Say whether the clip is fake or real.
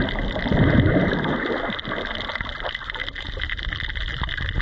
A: fake